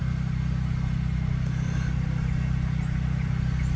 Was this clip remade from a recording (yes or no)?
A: no